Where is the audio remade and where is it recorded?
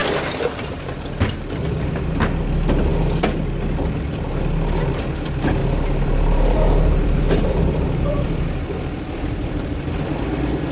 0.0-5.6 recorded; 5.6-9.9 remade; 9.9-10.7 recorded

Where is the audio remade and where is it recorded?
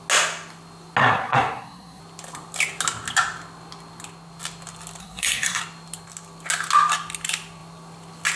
0.0-1.0 recorded; 1.0-2.0 remade; 2.0-5.0 recorded; 5.0-5.6 remade; 5.6-8.4 recorded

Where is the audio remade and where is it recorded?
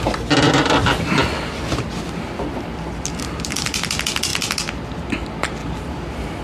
0.0-6.4 recorded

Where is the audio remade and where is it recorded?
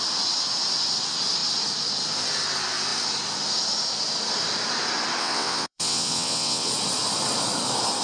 0.0-5.2 recorded; 5.2-6.7 remade; 6.7-8.0 recorded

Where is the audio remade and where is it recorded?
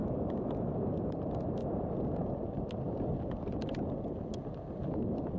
0.0-0.7 remade; 0.7-5.4 recorded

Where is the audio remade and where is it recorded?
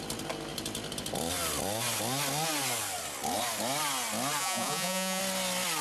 0.0-4.4 recorded; 4.4-5.2 remade; 5.2-5.8 recorded